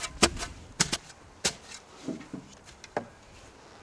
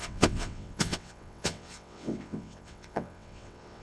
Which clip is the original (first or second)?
first